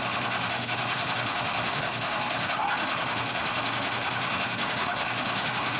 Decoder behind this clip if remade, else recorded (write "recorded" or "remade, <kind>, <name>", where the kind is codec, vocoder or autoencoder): remade, autoencoder, DAC-VAE